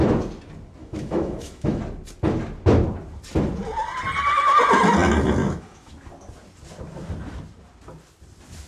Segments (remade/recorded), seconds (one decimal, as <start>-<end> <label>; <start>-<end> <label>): 0.0-0.8 recorded; 0.8-1.8 remade; 1.8-5.4 recorded; 5.4-5.9 remade; 5.9-8.7 recorded